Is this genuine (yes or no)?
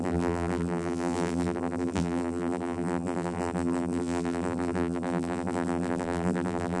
no